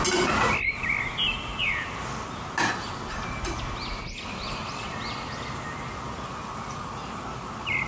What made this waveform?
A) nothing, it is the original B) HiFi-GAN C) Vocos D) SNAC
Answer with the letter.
A